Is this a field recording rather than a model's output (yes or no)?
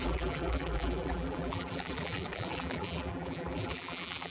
no